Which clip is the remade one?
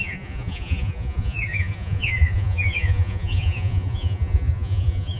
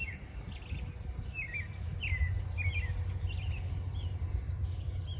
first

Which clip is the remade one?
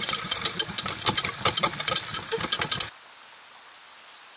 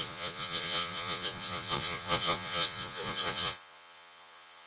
second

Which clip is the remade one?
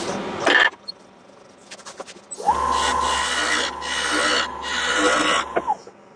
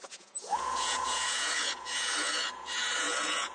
second